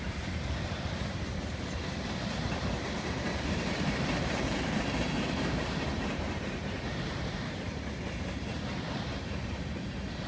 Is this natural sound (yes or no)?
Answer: no